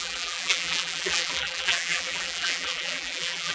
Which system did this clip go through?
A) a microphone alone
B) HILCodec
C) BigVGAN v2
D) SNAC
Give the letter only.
C